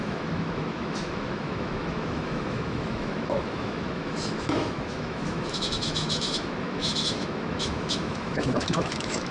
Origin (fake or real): fake